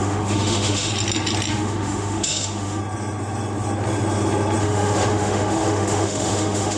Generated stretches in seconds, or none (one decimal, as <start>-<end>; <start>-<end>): 0.0-0.9; 1.5-2.8; 4.6-6.8